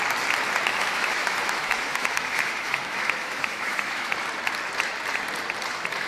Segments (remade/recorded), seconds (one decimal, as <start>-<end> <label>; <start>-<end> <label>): 0.0-0.7 recorded; 0.7-4.1 remade; 4.1-6.1 recorded